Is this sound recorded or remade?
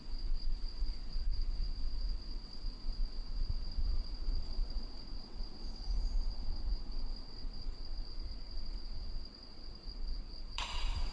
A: remade